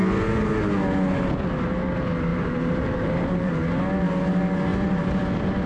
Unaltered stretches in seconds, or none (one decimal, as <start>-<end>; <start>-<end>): 0.0-2.3; 3.5-4.7; 5.2-5.7